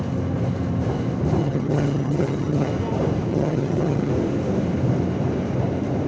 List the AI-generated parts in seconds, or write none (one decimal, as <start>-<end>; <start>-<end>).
1.4-2.7; 3.3-4.1